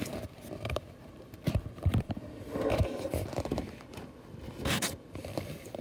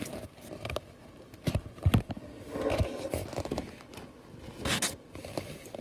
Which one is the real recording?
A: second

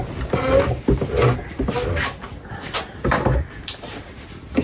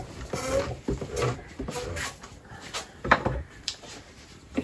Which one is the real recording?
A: first